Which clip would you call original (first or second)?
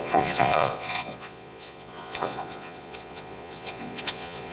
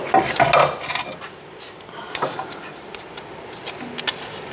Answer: second